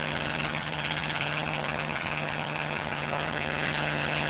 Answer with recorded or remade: remade